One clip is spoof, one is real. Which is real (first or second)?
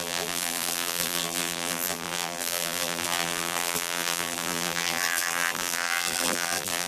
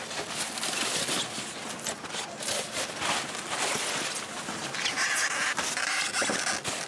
second